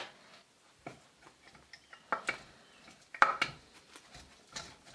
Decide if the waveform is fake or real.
real